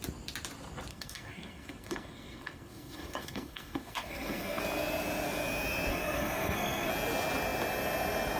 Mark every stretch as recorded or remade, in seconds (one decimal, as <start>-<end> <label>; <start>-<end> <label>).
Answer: 0.0-0.9 recorded; 0.9-4.6 remade; 4.6-5.9 recorded; 5.9-6.9 remade; 6.9-8.4 recorded